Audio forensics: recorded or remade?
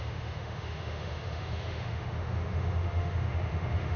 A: remade